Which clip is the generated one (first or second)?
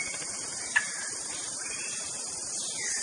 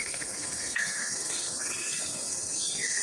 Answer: second